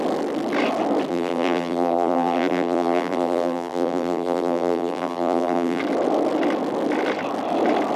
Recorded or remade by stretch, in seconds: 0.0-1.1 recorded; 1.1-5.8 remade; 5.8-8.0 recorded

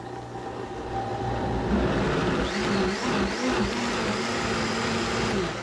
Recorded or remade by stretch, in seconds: 0.0-5.6 recorded

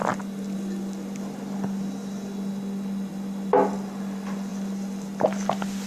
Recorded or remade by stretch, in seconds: 0.0-5.9 recorded